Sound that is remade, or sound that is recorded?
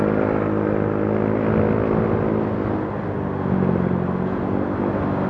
recorded